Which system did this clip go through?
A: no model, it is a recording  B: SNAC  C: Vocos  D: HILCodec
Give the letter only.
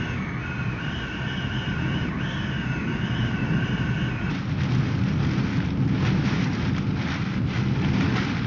A